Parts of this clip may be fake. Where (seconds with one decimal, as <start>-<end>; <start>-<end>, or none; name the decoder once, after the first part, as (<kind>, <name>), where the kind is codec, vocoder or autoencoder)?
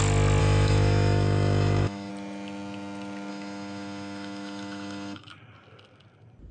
0.4-2.1 (autoencoder, DAC-VAE); 3.3-5.3